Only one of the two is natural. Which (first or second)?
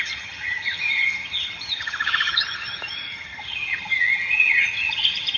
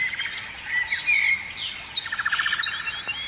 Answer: second